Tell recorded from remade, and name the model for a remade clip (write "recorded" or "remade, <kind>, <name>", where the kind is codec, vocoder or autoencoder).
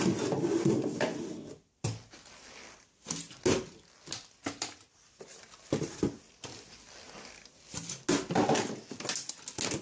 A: recorded